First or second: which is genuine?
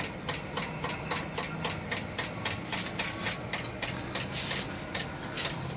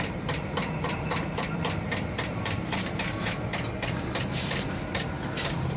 first